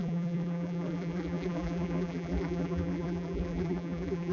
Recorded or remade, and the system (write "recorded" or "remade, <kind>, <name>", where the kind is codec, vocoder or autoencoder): remade, vocoder, BigVGAN v2